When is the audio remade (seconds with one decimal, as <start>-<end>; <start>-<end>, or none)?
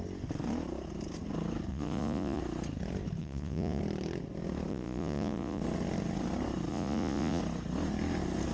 1.7-2.4; 3.2-3.8; 4.7-5.6; 6.7-7.4